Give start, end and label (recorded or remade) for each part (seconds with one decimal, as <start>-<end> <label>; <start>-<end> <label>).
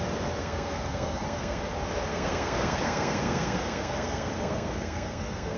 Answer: 0.0-0.4 recorded; 0.4-1.6 remade; 1.6-2.1 recorded; 2.1-5.6 remade